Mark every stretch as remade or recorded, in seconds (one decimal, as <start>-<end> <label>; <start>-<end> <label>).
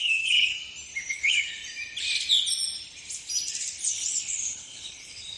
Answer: 0.0-0.5 remade; 0.5-1.1 recorded; 1.1-1.6 remade; 1.6-3.8 recorded; 3.8-5.4 remade